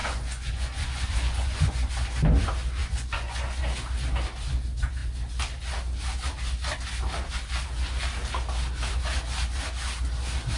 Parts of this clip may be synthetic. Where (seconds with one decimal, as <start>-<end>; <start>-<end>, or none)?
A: 0.0-1.9; 2.8-3.6